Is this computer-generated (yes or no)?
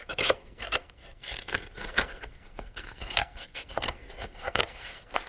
yes